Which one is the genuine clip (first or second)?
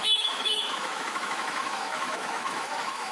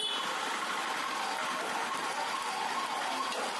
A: second